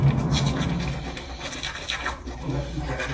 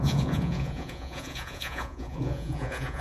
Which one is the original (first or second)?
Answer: first